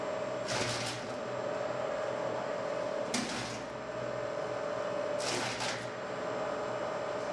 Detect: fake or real real